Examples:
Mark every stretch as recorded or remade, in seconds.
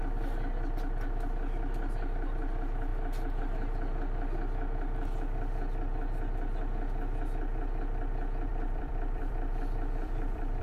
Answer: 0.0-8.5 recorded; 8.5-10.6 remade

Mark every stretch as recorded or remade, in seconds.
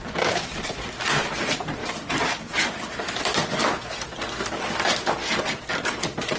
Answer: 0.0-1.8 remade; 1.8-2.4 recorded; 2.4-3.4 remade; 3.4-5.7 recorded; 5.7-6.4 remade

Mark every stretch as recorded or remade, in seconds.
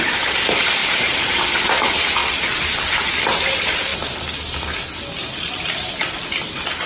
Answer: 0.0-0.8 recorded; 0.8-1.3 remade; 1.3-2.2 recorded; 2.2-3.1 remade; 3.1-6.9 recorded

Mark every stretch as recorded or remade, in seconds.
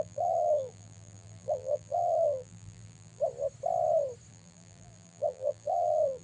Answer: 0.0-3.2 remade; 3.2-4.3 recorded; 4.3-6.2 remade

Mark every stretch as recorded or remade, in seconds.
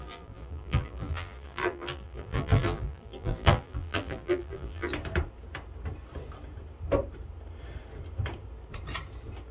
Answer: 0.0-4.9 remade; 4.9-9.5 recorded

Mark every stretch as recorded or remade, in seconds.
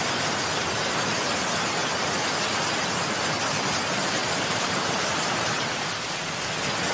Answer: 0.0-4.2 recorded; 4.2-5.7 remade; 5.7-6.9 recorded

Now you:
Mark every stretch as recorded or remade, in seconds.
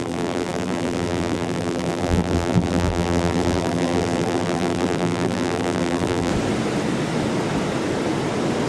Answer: 0.0-6.3 remade; 6.3-8.7 recorded